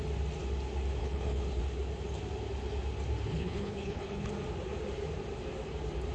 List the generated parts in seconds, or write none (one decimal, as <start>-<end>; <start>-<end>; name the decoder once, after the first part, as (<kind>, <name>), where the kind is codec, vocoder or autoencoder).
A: 1.0-1.6 (codec, HILCodec); 3.3-4.3